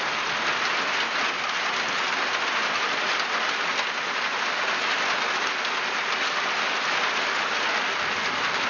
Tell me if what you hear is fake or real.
real